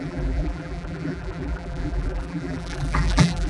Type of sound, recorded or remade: remade